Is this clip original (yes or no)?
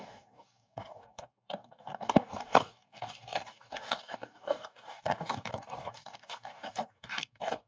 no